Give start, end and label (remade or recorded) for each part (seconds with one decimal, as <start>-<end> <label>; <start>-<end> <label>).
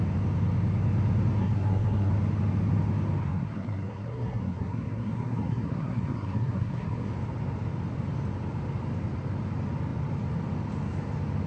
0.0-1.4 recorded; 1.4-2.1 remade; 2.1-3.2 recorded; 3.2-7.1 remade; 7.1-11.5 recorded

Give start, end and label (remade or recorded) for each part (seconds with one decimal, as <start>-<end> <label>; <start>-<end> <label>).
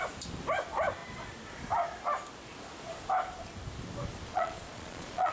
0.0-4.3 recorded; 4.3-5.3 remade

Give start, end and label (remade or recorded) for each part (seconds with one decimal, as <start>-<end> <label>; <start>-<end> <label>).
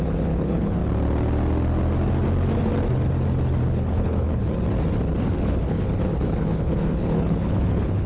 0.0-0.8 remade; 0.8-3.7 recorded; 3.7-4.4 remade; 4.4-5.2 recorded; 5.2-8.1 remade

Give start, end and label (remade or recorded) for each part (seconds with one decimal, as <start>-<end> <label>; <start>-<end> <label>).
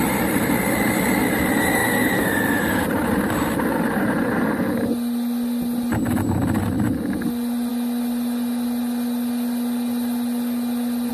0.0-11.1 recorded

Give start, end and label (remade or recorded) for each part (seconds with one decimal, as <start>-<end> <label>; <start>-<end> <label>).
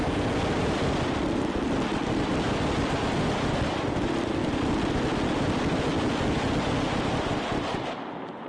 0.0-8.5 recorded